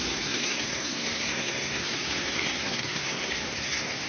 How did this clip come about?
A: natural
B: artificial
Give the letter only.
B